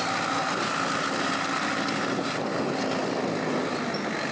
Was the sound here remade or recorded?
recorded